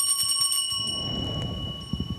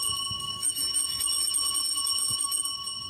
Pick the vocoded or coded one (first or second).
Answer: second